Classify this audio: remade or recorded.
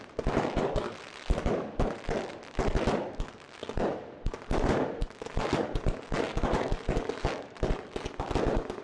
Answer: recorded